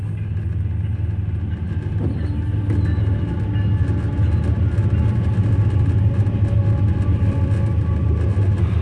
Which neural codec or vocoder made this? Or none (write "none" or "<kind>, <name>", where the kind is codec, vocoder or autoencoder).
none